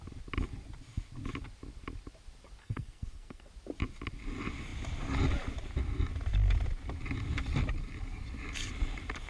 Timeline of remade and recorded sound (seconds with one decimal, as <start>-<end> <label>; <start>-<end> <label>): 0.0-2.6 recorded; 2.6-3.5 remade; 3.5-9.3 recorded